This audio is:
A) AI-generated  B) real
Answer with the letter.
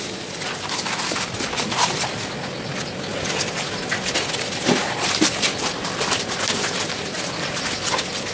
B